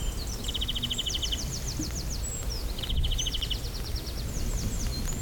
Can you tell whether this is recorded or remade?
recorded